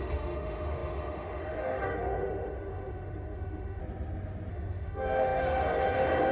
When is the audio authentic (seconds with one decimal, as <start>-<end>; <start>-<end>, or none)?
3.8-4.5